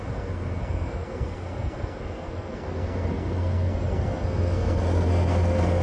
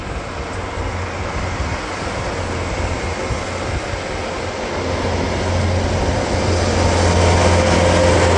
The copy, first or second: first